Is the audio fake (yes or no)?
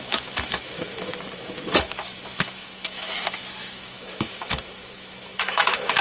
yes